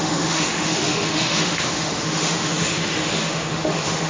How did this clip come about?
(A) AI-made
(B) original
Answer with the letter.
A